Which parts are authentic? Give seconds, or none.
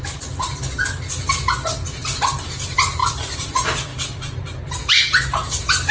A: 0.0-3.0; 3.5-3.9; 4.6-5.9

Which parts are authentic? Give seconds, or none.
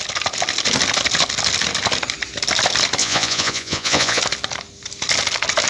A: 0.0-3.0; 4.2-5.7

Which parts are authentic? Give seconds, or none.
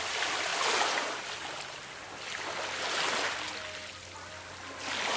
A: 0.0-5.2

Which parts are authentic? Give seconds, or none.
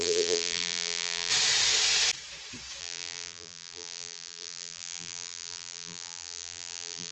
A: 1.3-2.8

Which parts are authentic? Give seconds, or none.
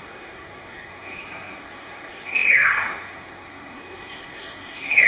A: none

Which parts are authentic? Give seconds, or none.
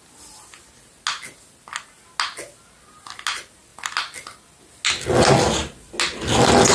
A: 0.0-6.7